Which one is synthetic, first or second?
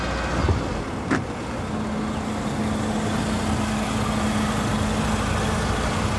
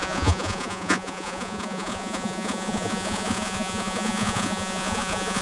second